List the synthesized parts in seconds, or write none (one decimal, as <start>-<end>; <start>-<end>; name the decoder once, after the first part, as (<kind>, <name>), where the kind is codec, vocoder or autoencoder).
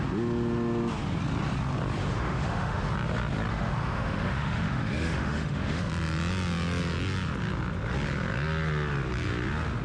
2.0-2.9 (autoencoder, DAC-VAE); 3.5-5.9